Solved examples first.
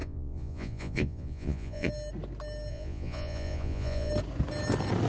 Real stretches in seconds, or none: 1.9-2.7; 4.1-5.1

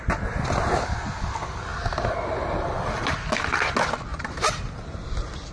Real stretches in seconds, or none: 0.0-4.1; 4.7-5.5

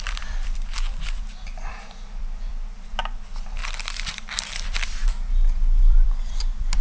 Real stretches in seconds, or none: 5.0-5.8